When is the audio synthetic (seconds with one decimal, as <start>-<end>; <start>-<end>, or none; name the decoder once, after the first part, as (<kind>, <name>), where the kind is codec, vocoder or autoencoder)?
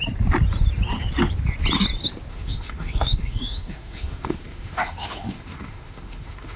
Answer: 2.3-6.6 (autoencoder, DAC-VAE)